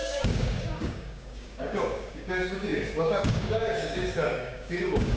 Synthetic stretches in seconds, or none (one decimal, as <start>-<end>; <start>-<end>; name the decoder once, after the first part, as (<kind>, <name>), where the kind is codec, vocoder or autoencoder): 0.0-5.2 (codec, DAC)